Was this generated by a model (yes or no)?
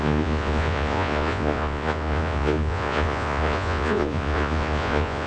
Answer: yes